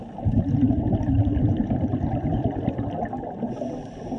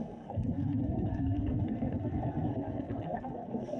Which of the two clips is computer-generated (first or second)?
second